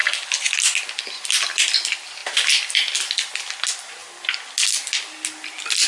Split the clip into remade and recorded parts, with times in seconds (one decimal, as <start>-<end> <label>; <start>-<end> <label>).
0.0-5.9 recorded